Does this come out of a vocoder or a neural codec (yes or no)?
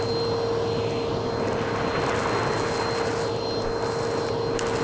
no